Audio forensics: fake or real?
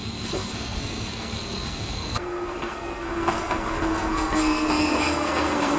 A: fake